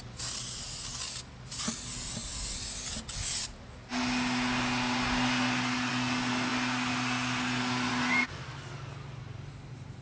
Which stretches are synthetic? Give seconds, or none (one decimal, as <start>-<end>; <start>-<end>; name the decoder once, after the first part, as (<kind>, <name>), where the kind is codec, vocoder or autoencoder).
none